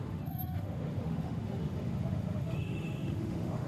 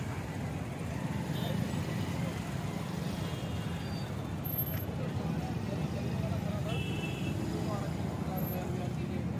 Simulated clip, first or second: first